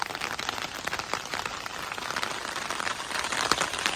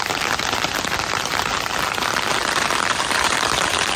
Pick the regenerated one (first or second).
second